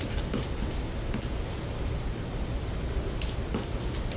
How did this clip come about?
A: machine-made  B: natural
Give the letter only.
B